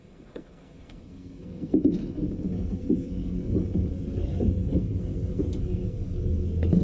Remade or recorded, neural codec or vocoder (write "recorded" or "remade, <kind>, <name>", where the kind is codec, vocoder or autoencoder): remade, codec, SNAC